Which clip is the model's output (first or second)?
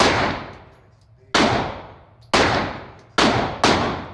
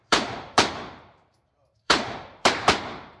second